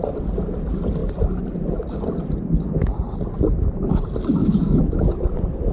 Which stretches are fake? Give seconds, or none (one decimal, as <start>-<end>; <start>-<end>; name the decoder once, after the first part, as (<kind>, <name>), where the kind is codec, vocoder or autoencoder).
4.4-5.1 (autoencoder, DAC-VAE)